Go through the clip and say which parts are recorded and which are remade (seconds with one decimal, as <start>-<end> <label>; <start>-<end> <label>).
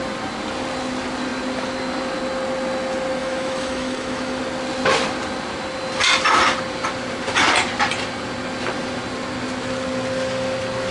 0.0-3.2 recorded; 3.2-4.4 remade; 4.4-10.9 recorded